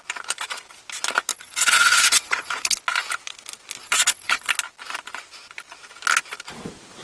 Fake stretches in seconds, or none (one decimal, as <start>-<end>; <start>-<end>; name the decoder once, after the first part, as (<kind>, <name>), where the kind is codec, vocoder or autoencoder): 1.3-2.8 (vocoder, WaveNeXt); 3.8-4.5

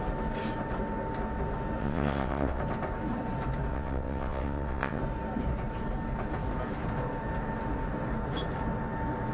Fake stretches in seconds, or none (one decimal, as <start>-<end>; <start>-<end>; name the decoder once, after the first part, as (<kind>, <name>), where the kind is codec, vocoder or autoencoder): 1.8-2.6 (vocoder, WaveNeXt); 3.7-5.0